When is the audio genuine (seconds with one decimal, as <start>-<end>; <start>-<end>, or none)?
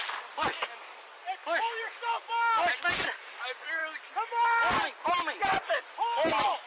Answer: 0.0-1.4; 2.3-6.7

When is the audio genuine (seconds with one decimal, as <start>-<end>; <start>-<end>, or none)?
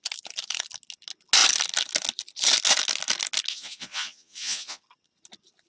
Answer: 0.0-3.5; 4.8-5.7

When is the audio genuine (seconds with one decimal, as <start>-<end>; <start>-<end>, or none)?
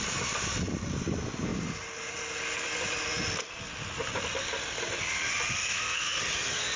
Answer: 0.0-5.7; 6.2-6.8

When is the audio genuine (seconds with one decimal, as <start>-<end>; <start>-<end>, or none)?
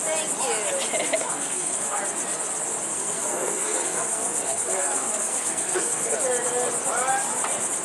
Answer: 0.0-1.2; 2.0-2.9; 6.1-7.8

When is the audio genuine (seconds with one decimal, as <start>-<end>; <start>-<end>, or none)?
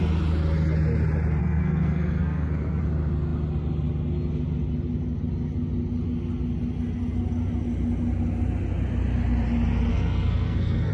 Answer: 0.0-1.4; 2.8-9.9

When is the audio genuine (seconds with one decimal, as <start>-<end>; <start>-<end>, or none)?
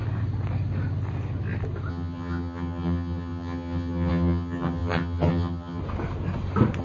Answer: 0.0-1.9; 5.8-6.8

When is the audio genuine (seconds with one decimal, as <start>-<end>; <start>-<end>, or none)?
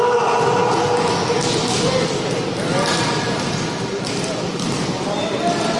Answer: 0.0-5.8